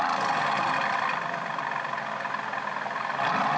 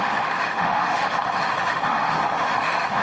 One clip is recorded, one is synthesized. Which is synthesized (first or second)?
second